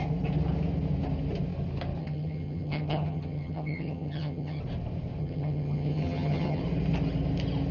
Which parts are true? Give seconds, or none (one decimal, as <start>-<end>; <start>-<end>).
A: 0.0-2.0; 4.6-5.2; 6.6-7.7